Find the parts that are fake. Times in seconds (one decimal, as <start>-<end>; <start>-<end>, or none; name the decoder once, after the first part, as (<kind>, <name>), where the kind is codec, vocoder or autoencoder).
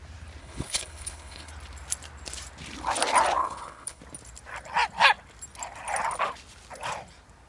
0.4-1.5 (codec, HILCodec); 3.4-4.0